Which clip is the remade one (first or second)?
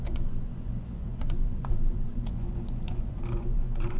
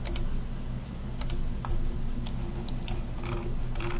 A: first